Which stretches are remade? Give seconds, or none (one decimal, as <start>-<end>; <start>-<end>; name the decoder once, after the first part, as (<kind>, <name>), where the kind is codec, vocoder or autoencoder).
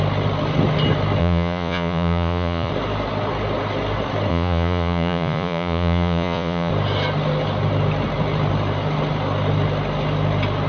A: 1.2-2.7 (vocoder, Vocos); 4.3-6.7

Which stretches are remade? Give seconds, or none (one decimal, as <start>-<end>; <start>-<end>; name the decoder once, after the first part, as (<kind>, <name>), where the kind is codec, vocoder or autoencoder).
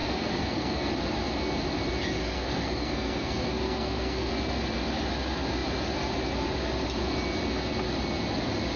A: 0.0-0.9 (codec, SNAC); 2.2-4.3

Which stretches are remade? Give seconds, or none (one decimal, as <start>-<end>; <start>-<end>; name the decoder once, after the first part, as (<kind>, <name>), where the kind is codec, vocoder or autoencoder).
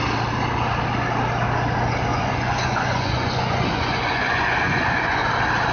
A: 2.1-5.3 (vocoder, Vocos)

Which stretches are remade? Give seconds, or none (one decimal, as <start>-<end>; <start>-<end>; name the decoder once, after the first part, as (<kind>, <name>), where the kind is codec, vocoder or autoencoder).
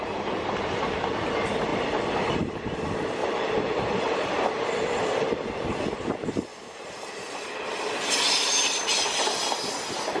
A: 3.2-4.7 (vocoder, BigVGAN v2); 6.5-7.2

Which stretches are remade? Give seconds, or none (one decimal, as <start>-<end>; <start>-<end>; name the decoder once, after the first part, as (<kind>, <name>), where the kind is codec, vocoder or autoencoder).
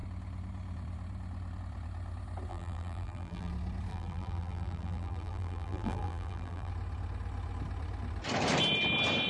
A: 2.5-3.5 (vocoder, BigVGAN v2); 3.9-6.7